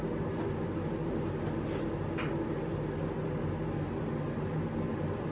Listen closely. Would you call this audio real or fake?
real